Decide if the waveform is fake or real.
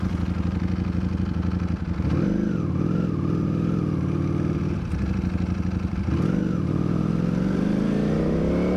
real